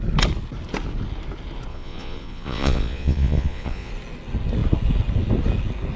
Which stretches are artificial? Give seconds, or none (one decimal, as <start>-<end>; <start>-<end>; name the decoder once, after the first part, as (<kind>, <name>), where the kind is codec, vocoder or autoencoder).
1.7-3.9 (vocoder, Vocos)